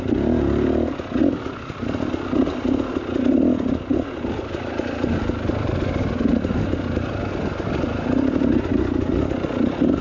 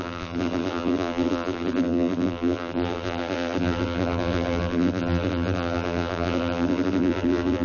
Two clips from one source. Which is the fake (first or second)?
second